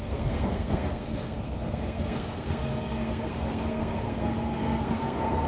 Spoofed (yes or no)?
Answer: yes